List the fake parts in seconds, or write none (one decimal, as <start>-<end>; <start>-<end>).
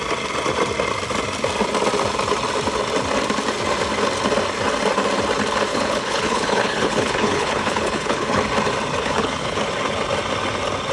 5.7-8.4; 9.0-9.6